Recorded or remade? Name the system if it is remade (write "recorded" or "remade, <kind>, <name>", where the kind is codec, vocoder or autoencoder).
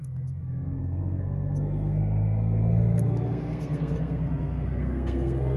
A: remade, codec, SNAC